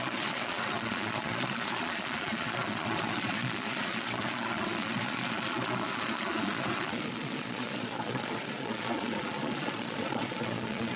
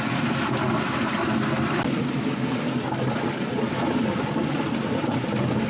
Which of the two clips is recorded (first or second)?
second